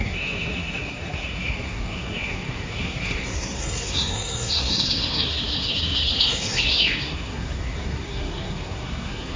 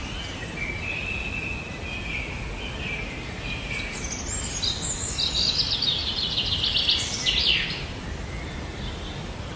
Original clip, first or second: second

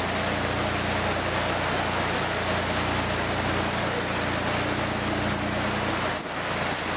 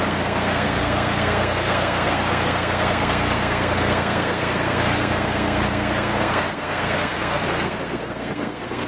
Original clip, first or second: first